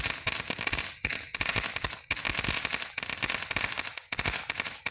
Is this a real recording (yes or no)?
yes